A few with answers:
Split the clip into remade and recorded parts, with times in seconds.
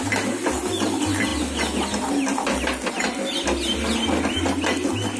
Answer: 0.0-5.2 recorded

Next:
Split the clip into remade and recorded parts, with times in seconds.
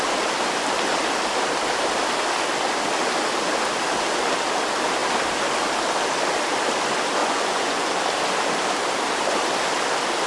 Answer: 0.0-7.2 recorded; 7.2-7.9 remade; 7.9-10.3 recorded